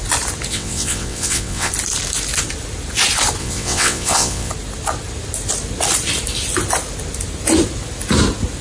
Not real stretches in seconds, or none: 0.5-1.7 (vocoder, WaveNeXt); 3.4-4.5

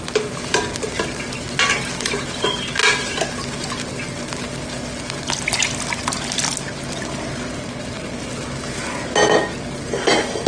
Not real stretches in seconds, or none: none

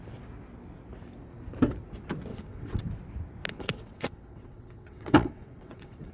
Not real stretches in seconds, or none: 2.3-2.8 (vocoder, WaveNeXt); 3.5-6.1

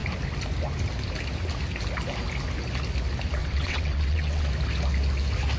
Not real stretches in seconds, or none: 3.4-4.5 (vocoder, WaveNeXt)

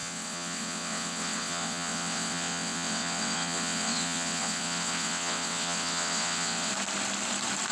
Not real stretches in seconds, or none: 0.0-6.7 (vocoder, WaveNeXt)